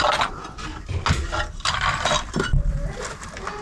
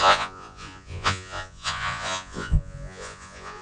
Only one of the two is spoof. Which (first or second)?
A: second